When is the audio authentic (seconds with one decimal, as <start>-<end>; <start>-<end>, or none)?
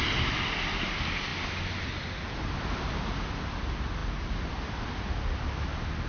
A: 0.0-6.1